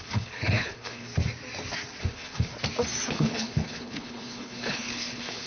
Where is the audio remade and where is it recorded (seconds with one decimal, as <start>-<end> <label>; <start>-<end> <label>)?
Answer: 0.0-1.1 remade; 1.1-2.0 recorded; 2.0-2.5 remade; 2.5-3.1 recorded; 3.1-5.5 remade